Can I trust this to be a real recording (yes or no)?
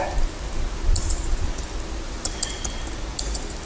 yes